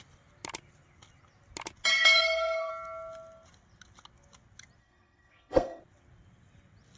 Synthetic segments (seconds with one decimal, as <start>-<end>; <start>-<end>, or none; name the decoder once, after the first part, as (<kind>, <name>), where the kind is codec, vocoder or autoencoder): 1.9-2.7 (codec, SNAC); 4.8-5.8